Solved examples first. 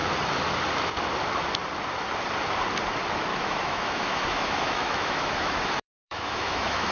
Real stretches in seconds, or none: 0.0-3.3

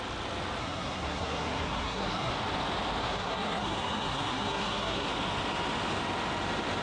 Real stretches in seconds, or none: 0.0-0.6; 2.3-3.0; 5.1-6.8

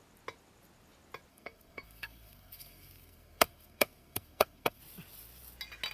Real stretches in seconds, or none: 0.0-1.3; 4.8-5.9

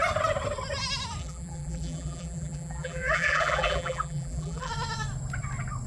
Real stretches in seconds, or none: 0.0-1.2; 4.7-5.9